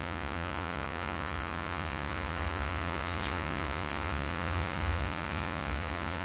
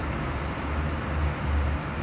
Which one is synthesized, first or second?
first